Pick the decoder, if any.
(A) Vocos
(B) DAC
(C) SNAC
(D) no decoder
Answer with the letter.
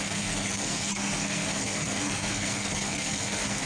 C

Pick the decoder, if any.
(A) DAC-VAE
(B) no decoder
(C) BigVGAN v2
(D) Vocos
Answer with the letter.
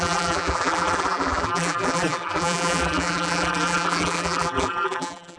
C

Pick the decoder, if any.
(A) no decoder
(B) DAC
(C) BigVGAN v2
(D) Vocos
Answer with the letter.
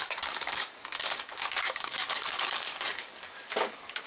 B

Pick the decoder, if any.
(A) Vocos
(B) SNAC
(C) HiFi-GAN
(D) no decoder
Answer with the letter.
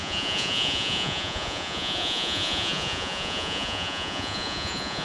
A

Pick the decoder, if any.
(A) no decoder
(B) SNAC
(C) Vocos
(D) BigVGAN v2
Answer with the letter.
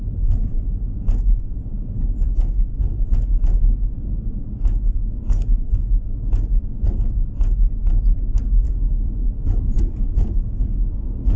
A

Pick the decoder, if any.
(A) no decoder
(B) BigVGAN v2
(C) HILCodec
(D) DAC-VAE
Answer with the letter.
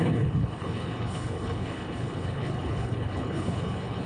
C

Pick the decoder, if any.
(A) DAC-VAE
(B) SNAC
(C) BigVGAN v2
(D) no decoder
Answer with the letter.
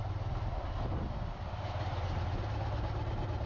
D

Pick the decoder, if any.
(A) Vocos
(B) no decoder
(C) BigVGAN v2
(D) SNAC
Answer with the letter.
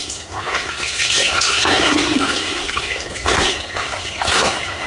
D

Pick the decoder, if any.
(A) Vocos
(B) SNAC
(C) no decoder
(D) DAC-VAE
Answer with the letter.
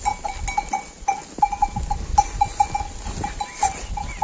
C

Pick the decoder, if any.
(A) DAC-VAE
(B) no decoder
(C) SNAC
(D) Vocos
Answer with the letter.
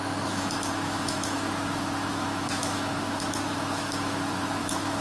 A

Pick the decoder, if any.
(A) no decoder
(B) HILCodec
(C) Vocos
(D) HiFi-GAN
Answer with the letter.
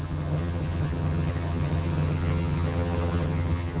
D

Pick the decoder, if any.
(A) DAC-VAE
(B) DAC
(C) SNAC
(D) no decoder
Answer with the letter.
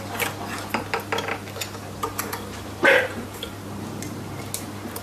D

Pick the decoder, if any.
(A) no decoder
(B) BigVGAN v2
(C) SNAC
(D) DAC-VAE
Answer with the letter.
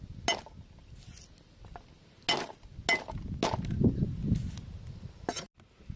A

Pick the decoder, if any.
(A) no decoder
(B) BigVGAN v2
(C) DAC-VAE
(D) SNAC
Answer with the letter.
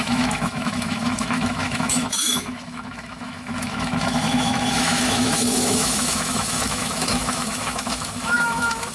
C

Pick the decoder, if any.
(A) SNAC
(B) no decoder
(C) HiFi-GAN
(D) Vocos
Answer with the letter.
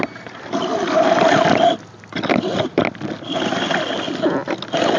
B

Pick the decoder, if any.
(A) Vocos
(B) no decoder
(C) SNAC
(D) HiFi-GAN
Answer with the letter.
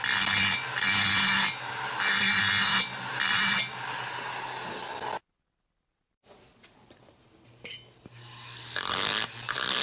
B